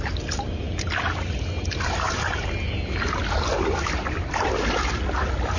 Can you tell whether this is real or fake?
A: real